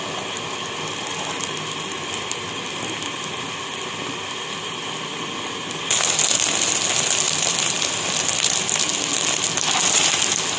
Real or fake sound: real